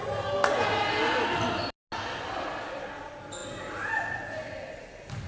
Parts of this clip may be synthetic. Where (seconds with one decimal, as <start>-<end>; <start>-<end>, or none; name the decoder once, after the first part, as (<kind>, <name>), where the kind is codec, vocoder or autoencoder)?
none